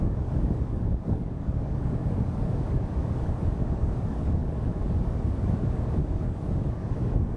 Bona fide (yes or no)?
no